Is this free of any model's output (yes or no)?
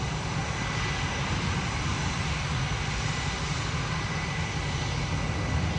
yes